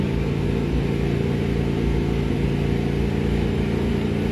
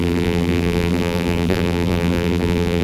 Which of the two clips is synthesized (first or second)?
second